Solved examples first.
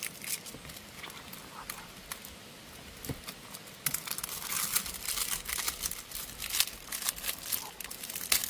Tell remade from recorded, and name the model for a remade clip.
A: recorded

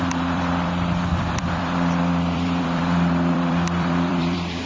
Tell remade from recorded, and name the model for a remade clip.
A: remade, vocoder, BigVGAN v2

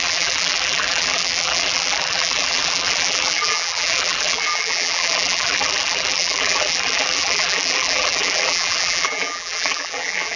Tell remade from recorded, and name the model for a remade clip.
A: remade, vocoder, BigVGAN v2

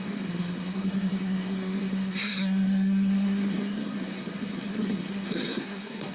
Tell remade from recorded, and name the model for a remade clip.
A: remade, codec, SNAC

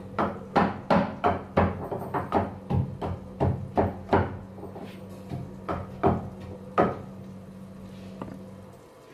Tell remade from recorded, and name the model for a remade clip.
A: recorded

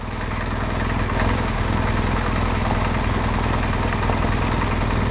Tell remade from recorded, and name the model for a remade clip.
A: recorded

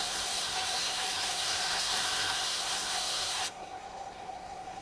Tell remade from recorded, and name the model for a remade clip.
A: remade, codec, SNAC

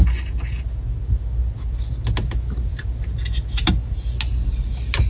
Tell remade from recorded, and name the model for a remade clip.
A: recorded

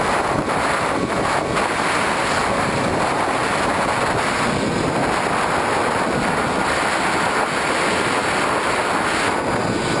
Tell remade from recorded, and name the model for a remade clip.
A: recorded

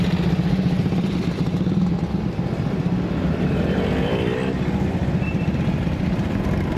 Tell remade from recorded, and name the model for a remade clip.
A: remade, vocoder, BigVGAN v2